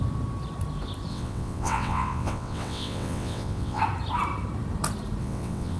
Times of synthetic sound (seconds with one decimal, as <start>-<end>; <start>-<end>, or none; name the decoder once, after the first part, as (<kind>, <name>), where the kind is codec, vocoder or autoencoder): 1.1-3.8 (vocoder, WaveNeXt); 5.2-5.8